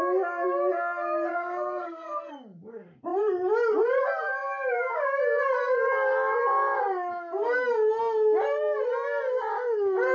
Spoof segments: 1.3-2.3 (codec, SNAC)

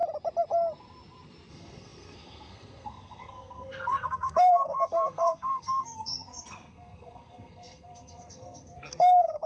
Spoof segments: 1.5-9.5 (codec, SNAC)